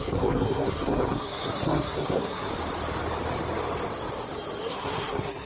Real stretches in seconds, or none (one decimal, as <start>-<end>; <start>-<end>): 2.5-4.6